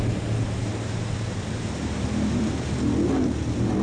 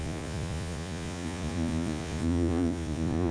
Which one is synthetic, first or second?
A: second